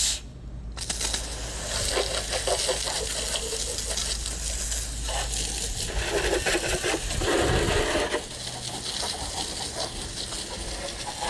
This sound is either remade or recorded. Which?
recorded